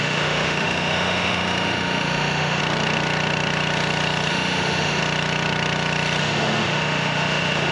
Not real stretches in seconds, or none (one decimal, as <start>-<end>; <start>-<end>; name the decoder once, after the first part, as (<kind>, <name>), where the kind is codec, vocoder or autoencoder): 0.0-2.6 (autoencoder, DAC-VAE); 4.3-5.0; 6.2-7.7